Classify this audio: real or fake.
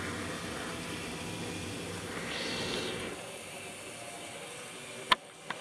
real